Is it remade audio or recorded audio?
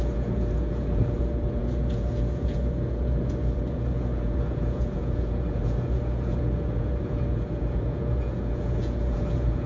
remade